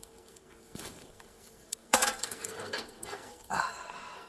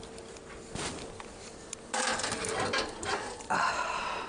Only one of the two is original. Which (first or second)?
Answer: second